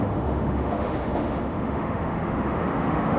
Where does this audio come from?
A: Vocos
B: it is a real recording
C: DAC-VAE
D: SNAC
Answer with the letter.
C